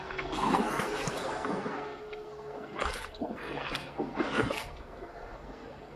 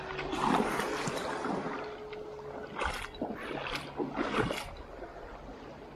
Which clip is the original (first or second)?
second